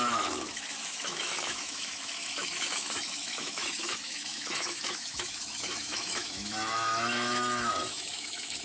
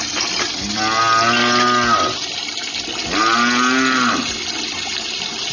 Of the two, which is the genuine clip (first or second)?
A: second